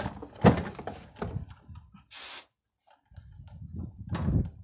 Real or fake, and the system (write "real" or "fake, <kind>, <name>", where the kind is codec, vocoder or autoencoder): real